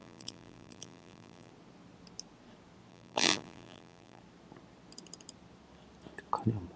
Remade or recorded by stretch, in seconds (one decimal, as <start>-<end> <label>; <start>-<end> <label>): 0.0-1.5 remade; 1.5-2.9 recorded; 2.9-4.2 remade; 4.2-6.8 recorded